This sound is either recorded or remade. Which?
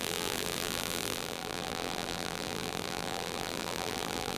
remade